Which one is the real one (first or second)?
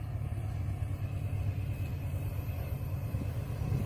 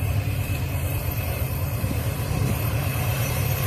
first